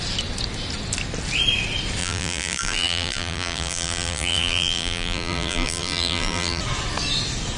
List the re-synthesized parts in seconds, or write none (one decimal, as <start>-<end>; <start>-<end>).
2.0-6.6

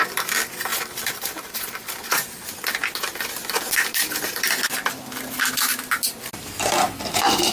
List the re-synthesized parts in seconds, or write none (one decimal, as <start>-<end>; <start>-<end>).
0.7-1.9

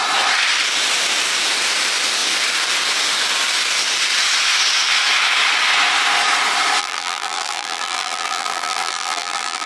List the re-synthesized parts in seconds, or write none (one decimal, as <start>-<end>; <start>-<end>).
6.8-9.7